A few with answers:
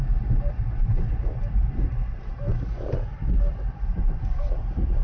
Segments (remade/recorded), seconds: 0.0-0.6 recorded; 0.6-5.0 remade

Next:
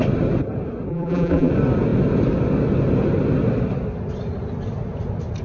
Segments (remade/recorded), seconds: 0.0-0.9 recorded; 0.9-1.5 remade; 1.5-5.4 recorded